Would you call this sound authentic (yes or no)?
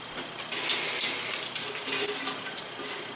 yes